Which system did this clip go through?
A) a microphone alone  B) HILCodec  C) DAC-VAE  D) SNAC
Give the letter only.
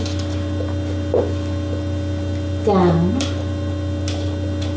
A